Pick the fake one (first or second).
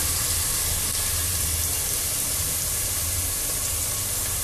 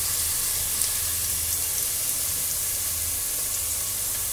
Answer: first